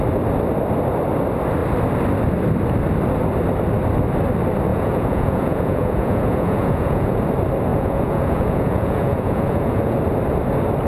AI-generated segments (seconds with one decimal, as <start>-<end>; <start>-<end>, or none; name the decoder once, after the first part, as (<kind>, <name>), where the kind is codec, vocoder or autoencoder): 4.7-7.2 (vocoder, Vocos); 7.7-10.0